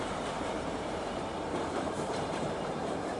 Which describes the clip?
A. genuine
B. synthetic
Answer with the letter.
B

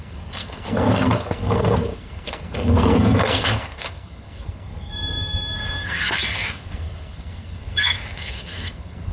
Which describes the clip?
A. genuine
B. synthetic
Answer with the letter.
B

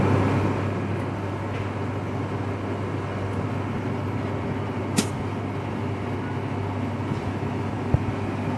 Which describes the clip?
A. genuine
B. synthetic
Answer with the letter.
A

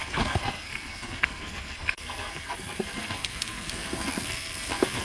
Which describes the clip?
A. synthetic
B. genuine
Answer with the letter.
A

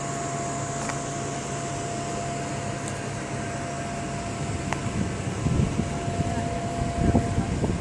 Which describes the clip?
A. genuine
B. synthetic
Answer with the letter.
A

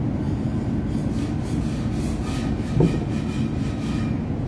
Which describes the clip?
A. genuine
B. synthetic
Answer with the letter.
A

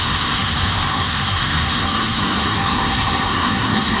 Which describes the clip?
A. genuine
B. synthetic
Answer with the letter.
B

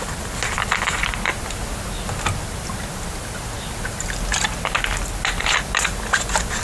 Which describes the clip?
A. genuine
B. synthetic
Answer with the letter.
A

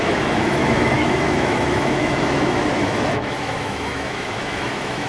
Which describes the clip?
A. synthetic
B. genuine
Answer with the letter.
A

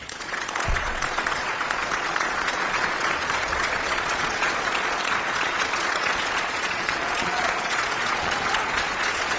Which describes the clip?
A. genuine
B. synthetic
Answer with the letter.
B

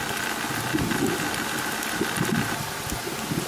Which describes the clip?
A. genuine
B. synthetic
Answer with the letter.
A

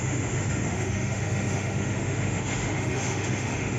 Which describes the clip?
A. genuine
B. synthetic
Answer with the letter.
B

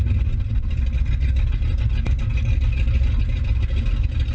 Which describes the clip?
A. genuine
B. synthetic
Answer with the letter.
A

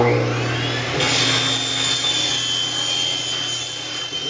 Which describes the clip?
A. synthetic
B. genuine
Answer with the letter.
B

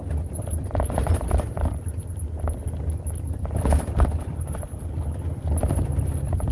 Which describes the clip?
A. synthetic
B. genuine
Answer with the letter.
B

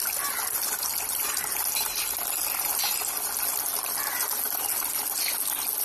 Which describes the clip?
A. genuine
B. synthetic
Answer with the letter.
A